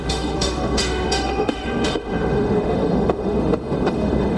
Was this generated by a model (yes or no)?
yes